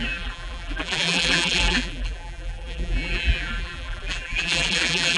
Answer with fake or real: fake